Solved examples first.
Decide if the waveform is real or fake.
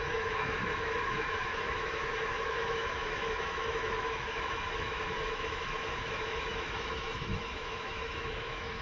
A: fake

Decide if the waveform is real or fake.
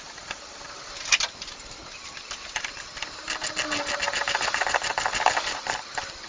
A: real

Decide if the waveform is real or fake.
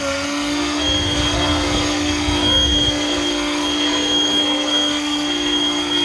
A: fake